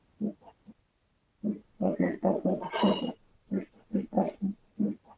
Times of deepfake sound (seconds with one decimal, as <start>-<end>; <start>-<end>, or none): 1.6-4.7